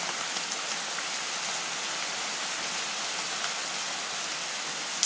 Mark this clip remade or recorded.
recorded